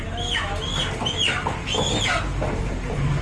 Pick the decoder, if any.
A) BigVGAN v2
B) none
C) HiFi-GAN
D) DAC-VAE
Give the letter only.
B